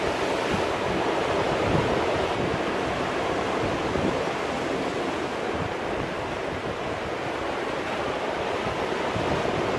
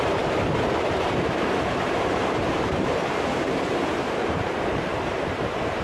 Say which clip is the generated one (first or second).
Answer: second